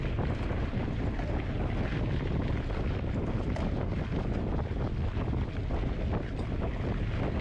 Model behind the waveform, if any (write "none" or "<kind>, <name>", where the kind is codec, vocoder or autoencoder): none